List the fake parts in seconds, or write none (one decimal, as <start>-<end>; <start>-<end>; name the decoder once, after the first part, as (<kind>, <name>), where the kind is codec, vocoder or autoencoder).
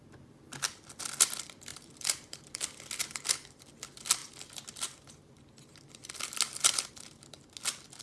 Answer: 1.7-2.4 (vocoder, BigVGAN v2)